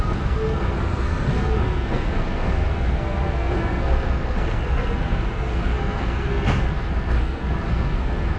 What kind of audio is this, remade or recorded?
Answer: remade